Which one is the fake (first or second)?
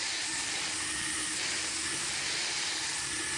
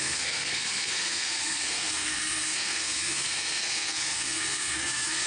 second